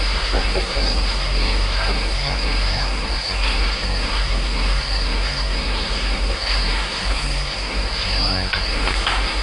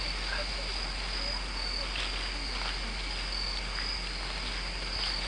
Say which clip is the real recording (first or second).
second